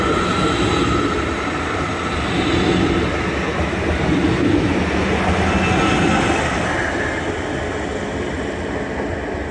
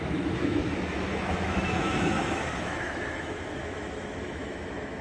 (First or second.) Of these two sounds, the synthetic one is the second